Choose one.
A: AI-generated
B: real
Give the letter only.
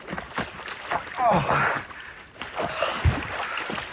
B